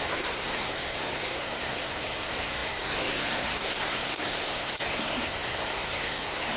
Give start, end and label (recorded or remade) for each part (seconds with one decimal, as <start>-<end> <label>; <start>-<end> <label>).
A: 0.0-6.6 remade